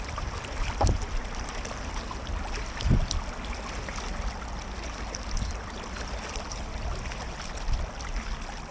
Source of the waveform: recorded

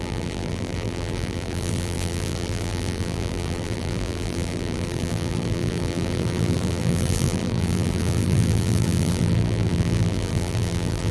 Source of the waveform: remade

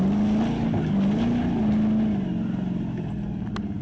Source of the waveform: recorded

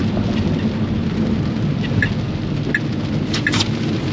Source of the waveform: recorded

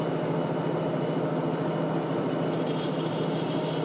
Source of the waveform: recorded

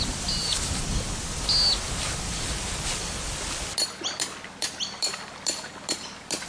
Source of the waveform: recorded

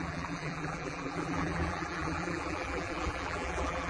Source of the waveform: remade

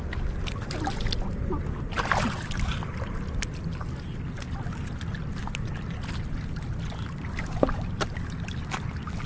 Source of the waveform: recorded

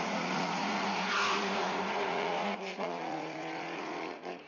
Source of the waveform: remade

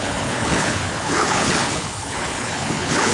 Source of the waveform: remade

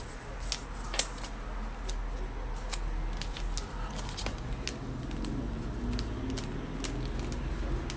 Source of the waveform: recorded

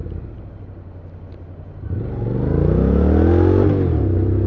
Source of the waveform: recorded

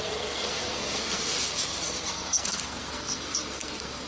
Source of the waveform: remade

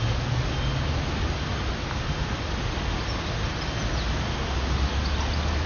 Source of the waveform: recorded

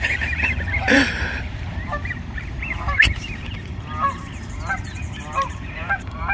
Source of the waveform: remade